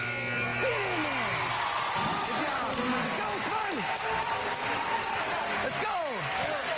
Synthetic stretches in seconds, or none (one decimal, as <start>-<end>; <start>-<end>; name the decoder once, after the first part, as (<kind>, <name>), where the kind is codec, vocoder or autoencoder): none